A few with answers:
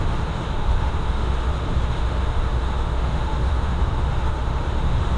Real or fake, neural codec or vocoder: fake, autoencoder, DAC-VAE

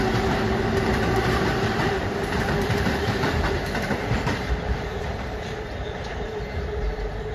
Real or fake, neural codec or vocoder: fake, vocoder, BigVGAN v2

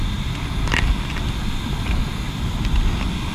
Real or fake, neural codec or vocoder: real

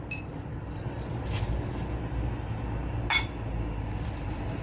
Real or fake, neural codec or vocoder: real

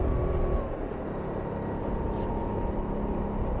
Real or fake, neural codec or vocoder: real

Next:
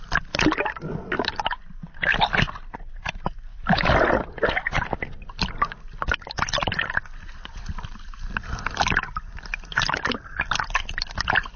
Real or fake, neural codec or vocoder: real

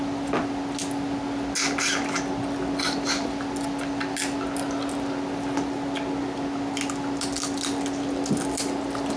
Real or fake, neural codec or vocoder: real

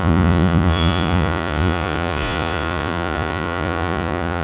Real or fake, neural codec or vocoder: fake, vocoder, Vocos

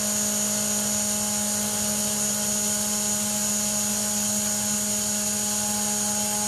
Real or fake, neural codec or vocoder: real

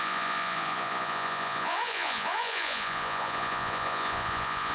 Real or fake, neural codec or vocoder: fake, vocoder, Vocos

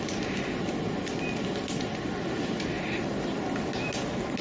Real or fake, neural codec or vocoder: real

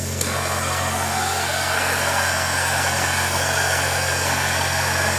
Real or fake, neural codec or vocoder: fake, codec, SNAC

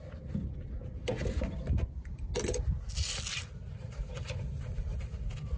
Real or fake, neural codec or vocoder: real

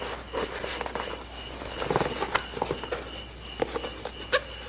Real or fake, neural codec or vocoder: real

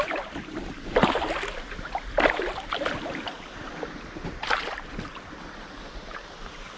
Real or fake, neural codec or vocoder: fake, vocoder, BigVGAN v2